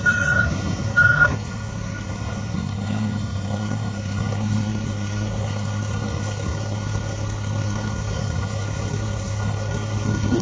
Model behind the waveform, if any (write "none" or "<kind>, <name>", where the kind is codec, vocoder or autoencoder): codec, SNAC